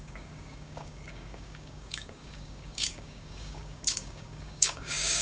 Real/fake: fake